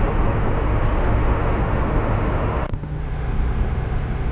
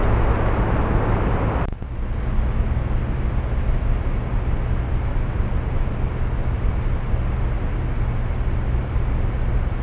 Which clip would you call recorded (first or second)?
second